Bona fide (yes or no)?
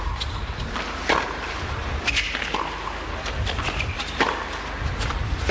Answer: yes